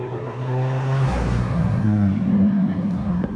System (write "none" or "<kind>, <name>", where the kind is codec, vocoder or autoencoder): codec, SNAC